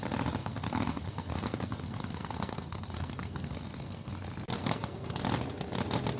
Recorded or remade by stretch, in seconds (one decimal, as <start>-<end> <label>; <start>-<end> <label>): 0.0-0.4 recorded; 0.4-4.1 remade; 4.1-4.6 recorded; 4.6-5.2 remade; 5.2-6.2 recorded